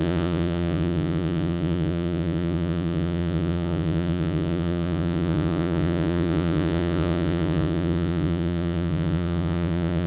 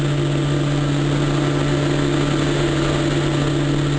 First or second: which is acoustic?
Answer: second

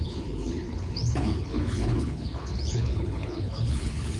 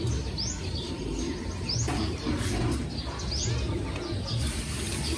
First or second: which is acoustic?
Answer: second